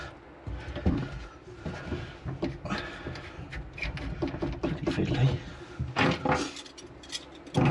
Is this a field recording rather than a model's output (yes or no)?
yes